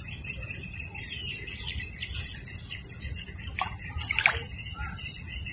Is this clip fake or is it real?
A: real